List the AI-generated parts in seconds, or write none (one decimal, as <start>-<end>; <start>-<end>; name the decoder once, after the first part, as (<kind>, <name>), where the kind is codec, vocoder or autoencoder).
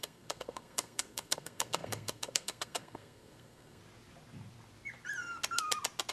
0.0-3.8 (codec, SNAC)